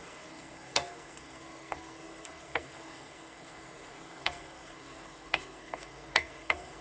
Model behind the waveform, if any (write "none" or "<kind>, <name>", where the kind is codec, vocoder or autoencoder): codec, SNAC